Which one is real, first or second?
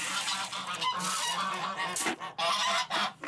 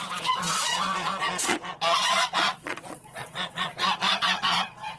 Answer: first